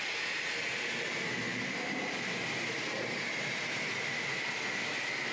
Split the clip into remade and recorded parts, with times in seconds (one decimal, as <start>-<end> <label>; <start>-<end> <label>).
0.0-1.5 recorded; 1.5-3.8 remade; 3.8-5.3 recorded